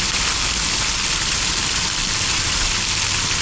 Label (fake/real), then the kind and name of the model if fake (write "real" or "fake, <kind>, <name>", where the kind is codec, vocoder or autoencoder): real